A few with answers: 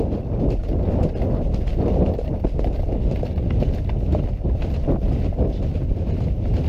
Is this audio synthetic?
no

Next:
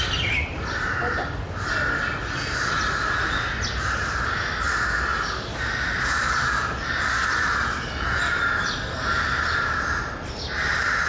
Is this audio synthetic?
no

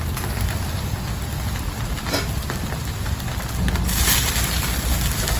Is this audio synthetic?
no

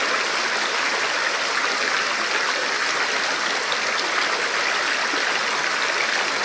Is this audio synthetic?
no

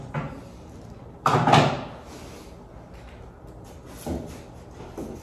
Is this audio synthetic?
no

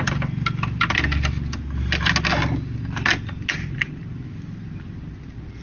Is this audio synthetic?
no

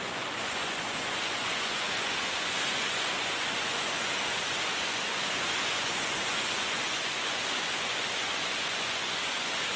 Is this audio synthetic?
yes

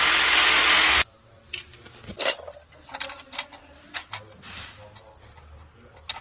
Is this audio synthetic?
no